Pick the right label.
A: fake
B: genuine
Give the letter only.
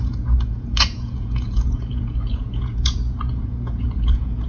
A